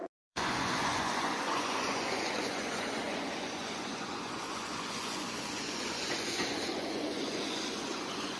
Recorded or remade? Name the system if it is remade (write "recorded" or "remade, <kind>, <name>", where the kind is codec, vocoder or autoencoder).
remade, vocoder, Vocos